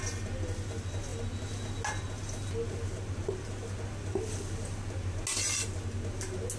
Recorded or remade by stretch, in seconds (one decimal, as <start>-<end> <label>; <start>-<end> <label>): 0.0-6.6 recorded